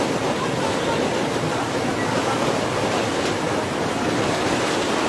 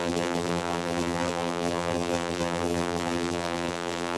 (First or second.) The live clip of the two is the first